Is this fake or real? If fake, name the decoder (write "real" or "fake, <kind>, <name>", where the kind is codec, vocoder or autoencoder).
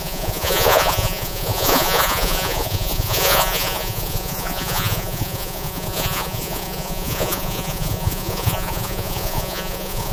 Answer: fake, vocoder, Vocos